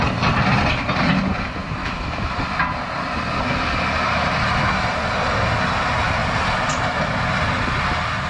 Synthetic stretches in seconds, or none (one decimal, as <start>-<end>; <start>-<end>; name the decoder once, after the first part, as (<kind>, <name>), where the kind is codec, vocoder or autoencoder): 1.8-2.4 (autoencoder, DAC-VAE)